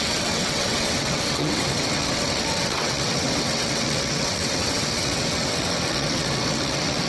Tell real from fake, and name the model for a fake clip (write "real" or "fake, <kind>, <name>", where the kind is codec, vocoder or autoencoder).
fake, vocoder, WaveNeXt